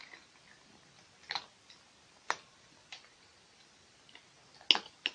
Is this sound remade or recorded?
recorded